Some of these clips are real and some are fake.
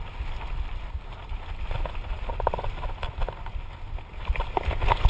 real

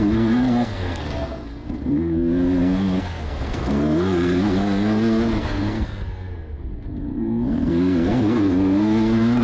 fake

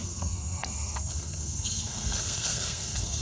fake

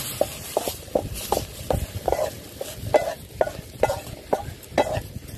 real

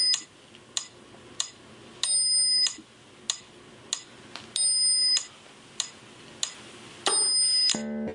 real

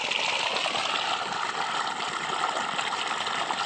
real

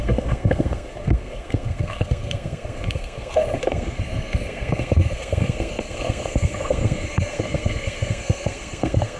fake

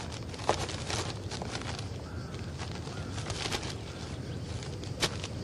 real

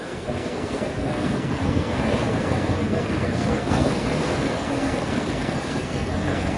fake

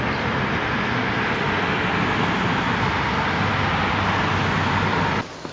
real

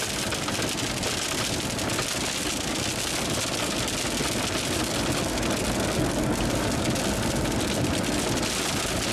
real